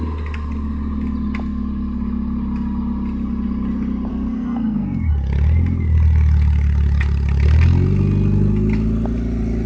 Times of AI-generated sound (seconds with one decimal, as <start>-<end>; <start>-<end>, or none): 4.1-5.1